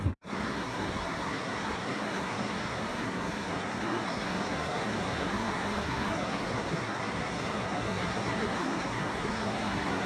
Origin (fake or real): fake